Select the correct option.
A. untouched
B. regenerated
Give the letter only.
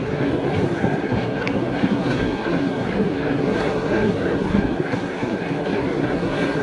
B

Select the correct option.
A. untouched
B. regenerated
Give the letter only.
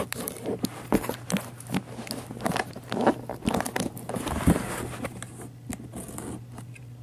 A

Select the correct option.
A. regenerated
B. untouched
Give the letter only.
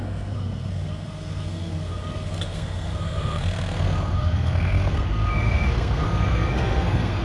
A